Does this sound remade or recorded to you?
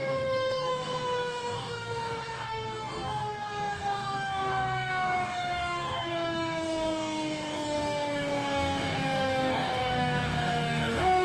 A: remade